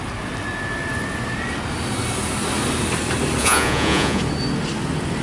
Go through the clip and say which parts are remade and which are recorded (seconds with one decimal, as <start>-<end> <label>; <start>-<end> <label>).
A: 0.0-3.4 recorded; 3.4-4.2 remade; 4.2-5.2 recorded